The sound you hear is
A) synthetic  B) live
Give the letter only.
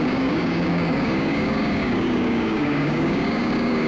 A